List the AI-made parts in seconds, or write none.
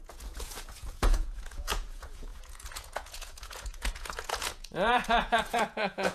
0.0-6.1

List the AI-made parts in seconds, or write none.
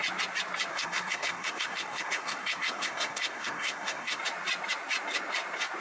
0.7-4.2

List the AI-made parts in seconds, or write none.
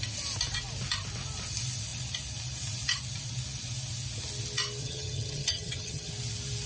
4.8-6.1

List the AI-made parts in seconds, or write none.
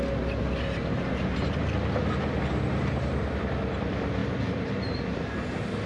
4.2-5.0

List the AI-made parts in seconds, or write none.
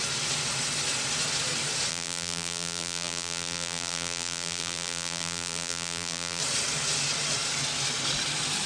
1.9-6.4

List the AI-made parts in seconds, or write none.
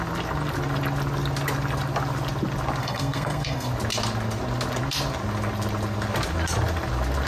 2.8-3.7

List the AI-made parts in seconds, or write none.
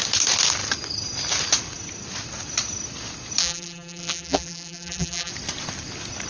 3.4-5.3